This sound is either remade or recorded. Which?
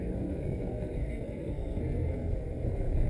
remade